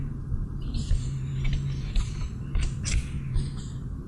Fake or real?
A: fake